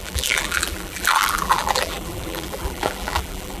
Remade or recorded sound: remade